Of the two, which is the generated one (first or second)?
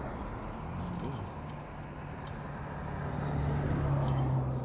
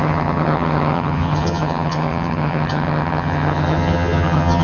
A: second